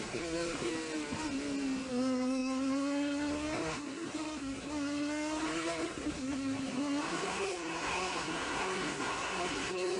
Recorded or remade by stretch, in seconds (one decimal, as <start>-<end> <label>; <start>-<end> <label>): 0.0-0.7 remade; 0.7-1.9 recorded; 1.9-10.0 remade